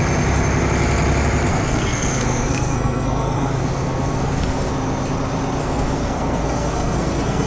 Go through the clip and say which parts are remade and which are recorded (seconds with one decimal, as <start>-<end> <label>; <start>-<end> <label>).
0.0-1.5 recorded; 1.5-4.7 remade; 4.7-5.6 recorded; 5.6-7.5 remade